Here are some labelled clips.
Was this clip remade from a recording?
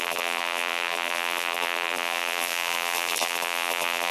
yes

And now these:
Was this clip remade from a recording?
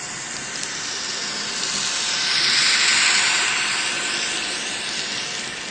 no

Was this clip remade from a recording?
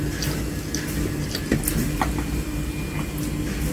no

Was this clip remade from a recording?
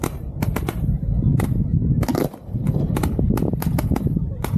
no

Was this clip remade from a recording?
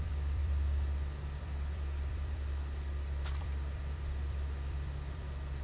yes